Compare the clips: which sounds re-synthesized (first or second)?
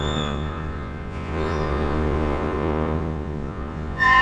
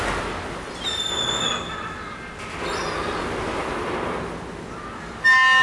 first